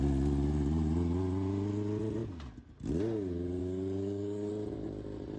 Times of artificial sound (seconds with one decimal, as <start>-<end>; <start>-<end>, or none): 3.6-4.5